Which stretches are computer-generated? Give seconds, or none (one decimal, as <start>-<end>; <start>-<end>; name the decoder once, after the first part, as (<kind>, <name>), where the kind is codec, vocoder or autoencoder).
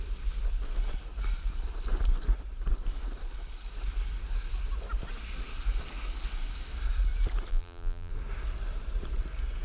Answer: 7.5-8.1 (vocoder, BigVGAN v2)